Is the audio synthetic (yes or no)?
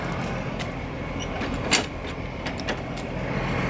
no